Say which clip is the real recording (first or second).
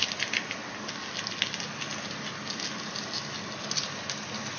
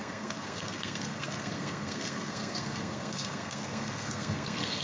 first